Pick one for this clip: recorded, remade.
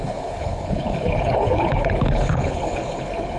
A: remade